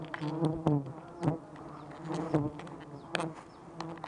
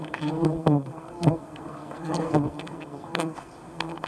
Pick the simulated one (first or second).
second